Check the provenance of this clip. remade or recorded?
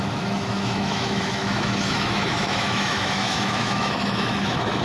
remade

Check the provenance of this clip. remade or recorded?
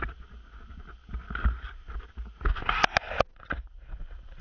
recorded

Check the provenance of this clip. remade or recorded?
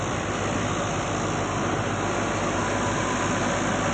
recorded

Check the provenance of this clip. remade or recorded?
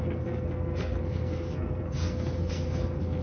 remade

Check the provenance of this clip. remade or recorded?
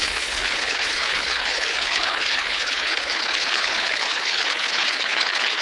remade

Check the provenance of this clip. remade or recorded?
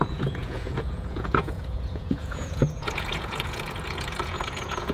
remade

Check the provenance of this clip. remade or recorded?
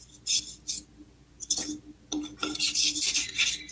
recorded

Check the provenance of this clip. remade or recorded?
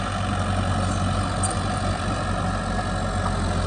recorded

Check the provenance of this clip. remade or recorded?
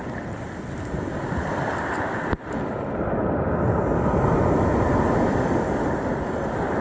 recorded